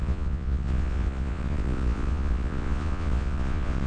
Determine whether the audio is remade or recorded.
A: remade